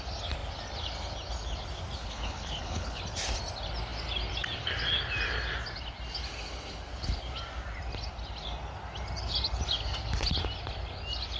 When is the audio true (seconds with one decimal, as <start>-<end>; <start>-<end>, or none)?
0.0-2.0; 3.0-11.4